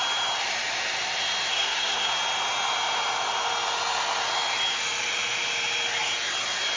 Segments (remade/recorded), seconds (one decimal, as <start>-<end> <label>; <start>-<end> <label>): 0.0-1.5 recorded; 1.5-2.1 remade; 2.1-6.8 recorded